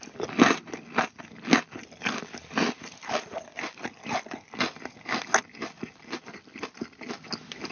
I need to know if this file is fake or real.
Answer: real